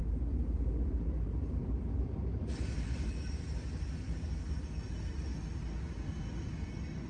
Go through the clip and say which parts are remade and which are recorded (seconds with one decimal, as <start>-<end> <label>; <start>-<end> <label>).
0.0-7.1 recorded